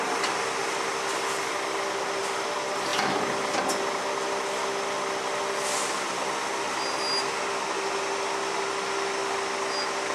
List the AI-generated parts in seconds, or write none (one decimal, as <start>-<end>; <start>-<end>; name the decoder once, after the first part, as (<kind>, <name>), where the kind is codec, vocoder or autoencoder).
none

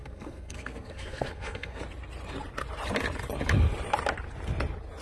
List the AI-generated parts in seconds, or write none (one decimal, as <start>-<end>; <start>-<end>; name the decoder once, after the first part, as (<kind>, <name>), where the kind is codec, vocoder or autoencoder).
0.0-1.8 (codec, SNAC)

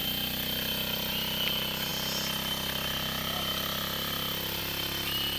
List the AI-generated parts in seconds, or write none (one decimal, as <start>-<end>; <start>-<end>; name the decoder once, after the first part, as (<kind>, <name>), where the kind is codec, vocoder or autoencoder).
none

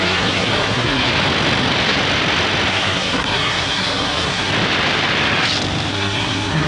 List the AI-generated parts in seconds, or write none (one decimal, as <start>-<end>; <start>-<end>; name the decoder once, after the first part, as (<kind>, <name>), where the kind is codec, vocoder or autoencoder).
0.0-1.1 (codec, SNAC); 2.7-4.5; 5.9-6.7

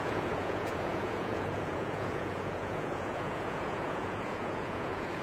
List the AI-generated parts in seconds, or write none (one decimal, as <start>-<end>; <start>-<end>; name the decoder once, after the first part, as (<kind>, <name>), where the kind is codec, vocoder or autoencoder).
0.0-5.2 (vocoder, Vocos)

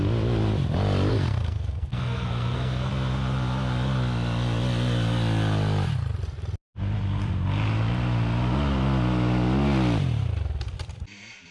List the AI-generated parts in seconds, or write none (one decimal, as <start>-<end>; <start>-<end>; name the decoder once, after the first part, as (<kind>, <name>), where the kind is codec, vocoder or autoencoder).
1.1-2.9 (codec, SNAC)

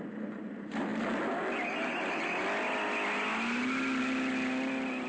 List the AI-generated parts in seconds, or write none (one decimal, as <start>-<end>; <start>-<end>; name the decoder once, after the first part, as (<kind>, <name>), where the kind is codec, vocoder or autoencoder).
none